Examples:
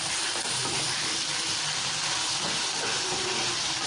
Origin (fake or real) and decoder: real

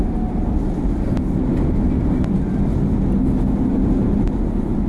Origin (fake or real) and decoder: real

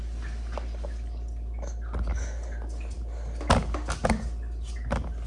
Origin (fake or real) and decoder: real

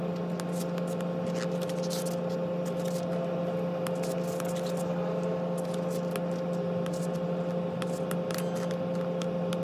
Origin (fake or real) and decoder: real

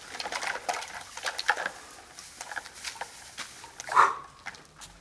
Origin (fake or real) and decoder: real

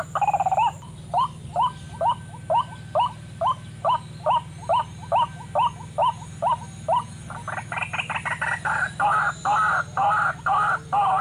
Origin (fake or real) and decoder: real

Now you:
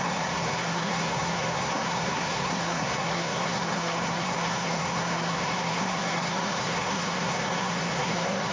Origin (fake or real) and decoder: fake, codec, SNAC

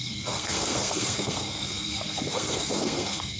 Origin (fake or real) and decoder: fake, codec, SNAC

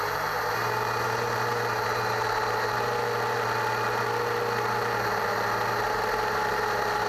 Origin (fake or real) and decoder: real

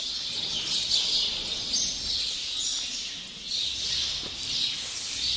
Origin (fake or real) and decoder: real